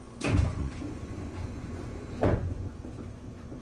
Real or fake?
fake